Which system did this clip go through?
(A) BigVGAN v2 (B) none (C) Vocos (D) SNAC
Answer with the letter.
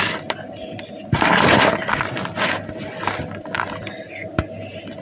B